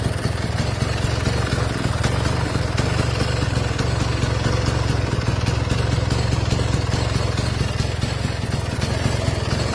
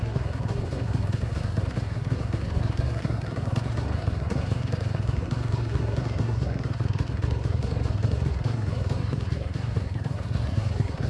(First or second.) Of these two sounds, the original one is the first